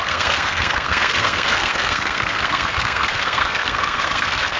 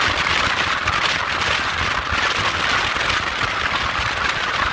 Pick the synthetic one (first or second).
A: first